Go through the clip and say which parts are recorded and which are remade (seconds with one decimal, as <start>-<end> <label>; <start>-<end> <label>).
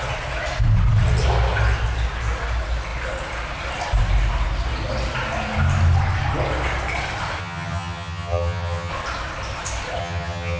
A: 0.0-7.4 recorded; 7.4-8.9 remade; 8.9-10.0 recorded; 10.0-10.6 remade